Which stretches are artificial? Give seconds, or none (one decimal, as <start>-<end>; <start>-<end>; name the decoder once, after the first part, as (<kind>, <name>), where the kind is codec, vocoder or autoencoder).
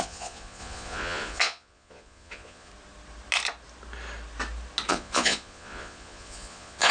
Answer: 0.0-2.7 (vocoder, Vocos); 4.9-6.9